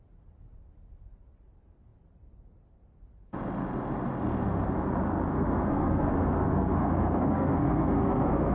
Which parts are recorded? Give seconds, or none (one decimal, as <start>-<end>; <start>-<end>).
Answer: 0.0-5.3